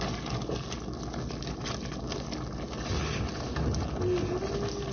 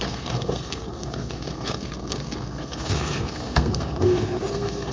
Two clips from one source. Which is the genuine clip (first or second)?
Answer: first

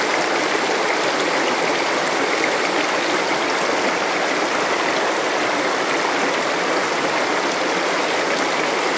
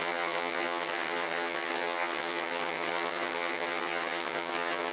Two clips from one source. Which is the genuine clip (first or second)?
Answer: first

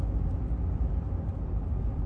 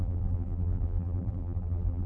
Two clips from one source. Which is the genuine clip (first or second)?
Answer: first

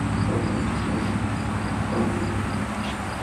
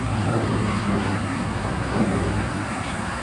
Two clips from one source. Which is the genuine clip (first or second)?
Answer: first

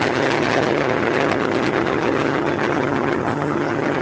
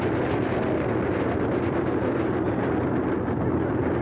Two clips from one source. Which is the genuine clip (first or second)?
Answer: second